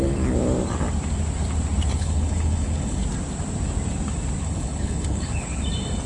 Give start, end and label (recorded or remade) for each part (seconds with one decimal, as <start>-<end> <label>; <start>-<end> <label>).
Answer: 0.0-1.9 recorded; 1.9-3.0 remade; 3.0-4.4 recorded; 4.4-5.6 remade; 5.6-6.1 recorded